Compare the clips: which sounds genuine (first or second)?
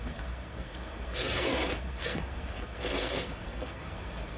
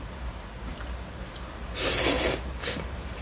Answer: second